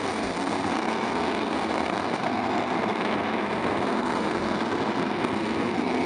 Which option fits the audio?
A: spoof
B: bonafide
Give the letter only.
A